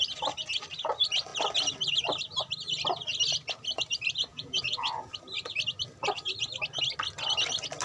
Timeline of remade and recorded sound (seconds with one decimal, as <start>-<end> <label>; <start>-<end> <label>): 0.0-4.3 recorded; 4.3-5.1 remade; 5.1-7.8 recorded